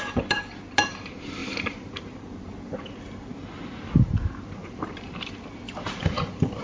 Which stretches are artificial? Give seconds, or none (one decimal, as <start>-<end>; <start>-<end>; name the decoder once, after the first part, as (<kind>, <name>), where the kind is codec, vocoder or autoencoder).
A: 0.0-3.3 (vocoder, BigVGAN v2); 3.8-6.6